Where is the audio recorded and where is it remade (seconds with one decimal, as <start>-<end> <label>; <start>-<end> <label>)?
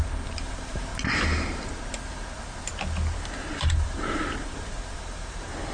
0.0-0.9 remade; 0.9-3.5 recorded; 3.5-5.7 remade